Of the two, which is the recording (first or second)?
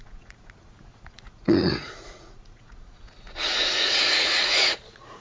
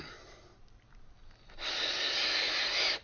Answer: second